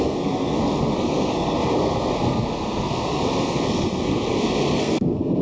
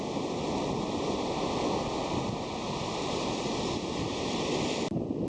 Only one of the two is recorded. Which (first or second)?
second